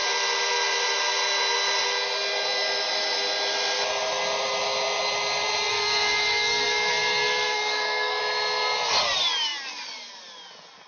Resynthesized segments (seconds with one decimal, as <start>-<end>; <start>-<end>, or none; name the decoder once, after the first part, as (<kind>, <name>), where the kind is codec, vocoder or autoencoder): 5.7-8.2 (codec, SNAC)